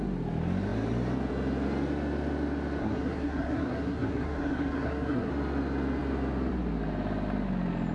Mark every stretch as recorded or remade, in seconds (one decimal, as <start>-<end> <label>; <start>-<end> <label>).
0.0-2.8 recorded; 2.8-5.3 remade; 5.3-7.9 recorded